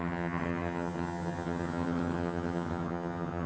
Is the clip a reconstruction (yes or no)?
yes